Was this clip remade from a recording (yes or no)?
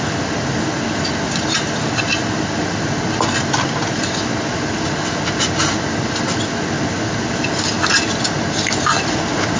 no